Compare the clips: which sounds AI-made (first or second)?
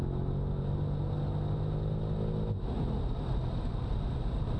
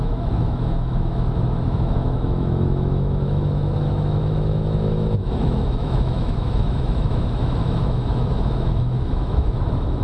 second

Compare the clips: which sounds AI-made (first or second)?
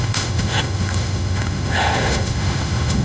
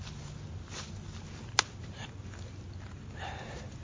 first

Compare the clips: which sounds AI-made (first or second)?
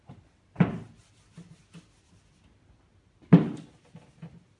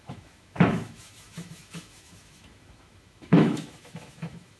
second